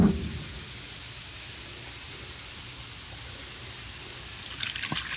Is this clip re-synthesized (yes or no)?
no